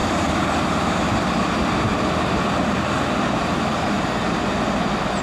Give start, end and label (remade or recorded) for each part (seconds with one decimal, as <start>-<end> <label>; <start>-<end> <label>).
0.0-0.7 remade; 0.7-5.2 recorded